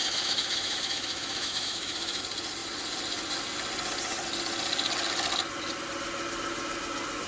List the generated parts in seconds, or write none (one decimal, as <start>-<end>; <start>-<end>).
0.0-2.2